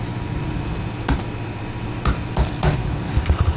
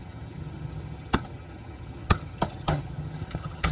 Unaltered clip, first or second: first